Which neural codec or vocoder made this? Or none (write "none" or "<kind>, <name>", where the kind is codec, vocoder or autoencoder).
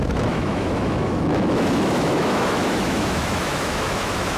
autoencoder, DAC-VAE